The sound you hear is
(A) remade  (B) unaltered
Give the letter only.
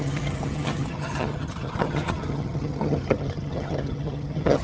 A